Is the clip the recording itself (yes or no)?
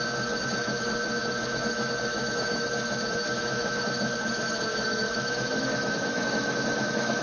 no